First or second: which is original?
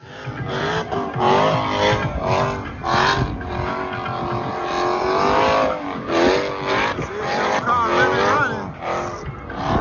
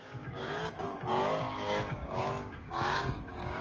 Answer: first